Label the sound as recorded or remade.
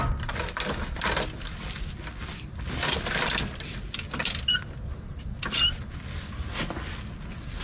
recorded